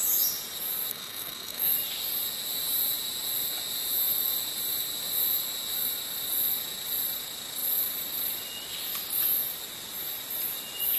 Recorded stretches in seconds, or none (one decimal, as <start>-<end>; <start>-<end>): 0.0-0.9; 1.7-11.0